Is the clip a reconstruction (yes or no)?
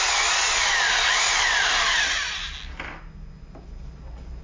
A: no